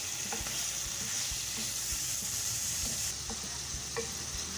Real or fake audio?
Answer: real